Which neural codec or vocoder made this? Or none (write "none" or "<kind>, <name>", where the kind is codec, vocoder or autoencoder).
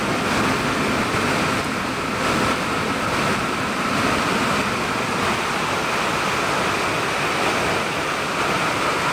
none